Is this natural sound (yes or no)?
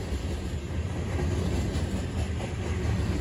yes